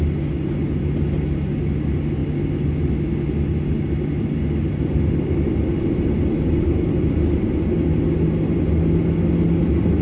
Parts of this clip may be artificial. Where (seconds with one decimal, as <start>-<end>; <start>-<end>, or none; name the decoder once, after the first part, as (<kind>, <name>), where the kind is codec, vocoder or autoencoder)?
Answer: none